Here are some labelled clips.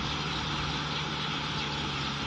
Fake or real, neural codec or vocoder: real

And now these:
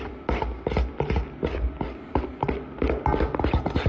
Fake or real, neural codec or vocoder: real